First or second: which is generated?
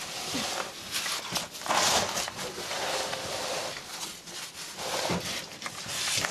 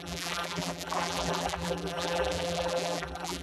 second